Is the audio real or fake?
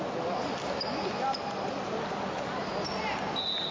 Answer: real